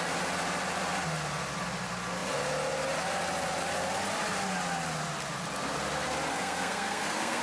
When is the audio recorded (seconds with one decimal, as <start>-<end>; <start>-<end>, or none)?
0.0-6.3